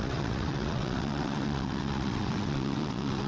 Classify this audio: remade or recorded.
remade